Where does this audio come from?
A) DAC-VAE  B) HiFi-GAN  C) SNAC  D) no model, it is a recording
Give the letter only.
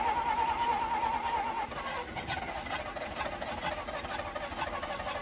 D